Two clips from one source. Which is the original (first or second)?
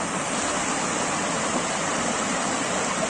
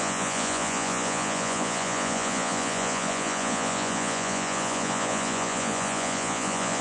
first